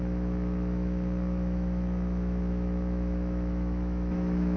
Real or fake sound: fake